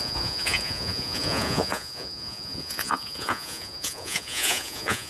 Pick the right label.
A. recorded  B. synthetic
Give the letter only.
B